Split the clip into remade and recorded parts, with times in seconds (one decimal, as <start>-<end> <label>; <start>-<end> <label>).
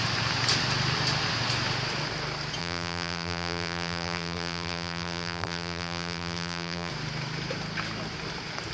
0.0-2.6 recorded; 2.6-6.9 remade; 6.9-8.7 recorded